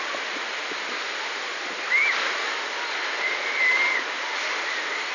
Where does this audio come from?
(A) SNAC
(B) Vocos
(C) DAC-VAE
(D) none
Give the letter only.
D